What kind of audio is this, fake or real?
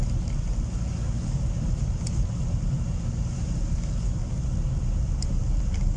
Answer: real